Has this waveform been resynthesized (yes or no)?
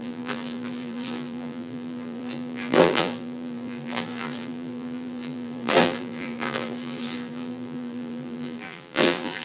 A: yes